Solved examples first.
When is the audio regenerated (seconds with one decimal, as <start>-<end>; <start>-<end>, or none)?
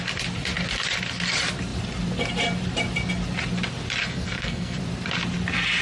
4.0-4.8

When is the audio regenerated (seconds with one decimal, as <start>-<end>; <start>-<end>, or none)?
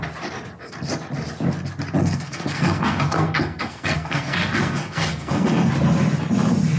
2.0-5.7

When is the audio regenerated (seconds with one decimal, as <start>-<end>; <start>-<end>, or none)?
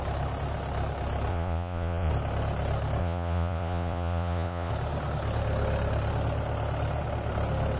1.3-2.1; 3.0-4.7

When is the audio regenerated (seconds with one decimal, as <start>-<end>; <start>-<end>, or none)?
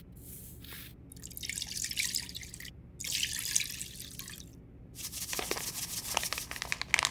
4.5-6.6